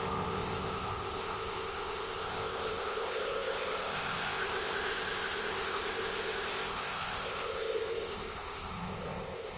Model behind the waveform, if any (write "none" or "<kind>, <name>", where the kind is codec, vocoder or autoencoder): codec, ZipCodec